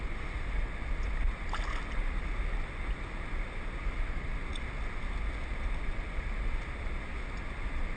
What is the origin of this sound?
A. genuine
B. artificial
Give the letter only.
A